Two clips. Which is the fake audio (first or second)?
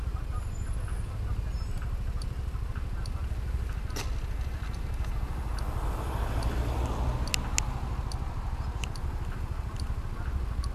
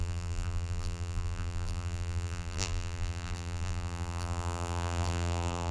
second